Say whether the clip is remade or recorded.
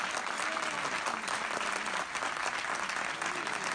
recorded